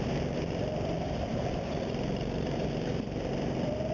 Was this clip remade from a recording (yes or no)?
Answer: yes